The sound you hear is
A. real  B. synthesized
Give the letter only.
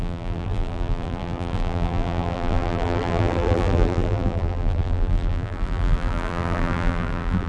B